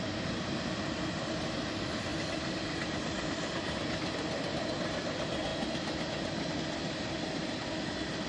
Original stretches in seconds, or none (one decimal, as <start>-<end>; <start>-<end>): 0.0-8.3